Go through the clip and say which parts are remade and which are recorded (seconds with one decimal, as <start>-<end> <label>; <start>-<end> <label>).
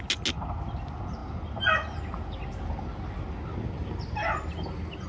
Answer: 0.0-5.1 recorded